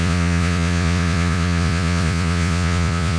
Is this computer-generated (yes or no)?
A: yes